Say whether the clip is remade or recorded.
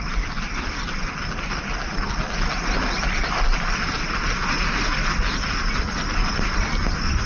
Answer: recorded